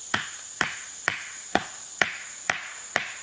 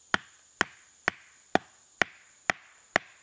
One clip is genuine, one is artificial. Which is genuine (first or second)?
second